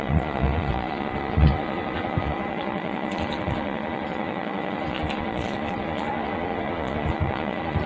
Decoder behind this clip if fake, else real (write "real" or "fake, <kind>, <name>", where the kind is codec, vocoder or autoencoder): fake, vocoder, Vocos